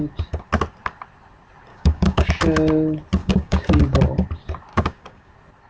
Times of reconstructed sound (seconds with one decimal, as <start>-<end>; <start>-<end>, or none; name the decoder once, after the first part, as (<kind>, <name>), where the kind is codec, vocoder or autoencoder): 1.7-2.3 (codec, DAC); 3.2-3.8; 4.7-5.3